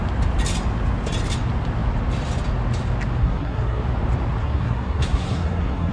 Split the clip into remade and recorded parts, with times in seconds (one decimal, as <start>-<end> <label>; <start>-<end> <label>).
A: 0.0-3.2 recorded; 3.2-3.8 remade; 3.8-4.4 recorded; 4.4-5.9 remade